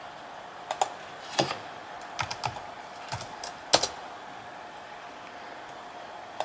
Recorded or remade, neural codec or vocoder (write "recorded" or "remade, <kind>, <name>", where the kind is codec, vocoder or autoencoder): recorded